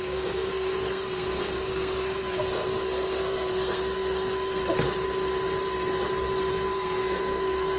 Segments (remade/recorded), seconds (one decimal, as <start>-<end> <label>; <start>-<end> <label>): 0.0-4.6 remade; 4.6-6.5 recorded; 6.5-7.8 remade